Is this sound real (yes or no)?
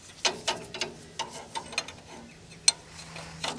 yes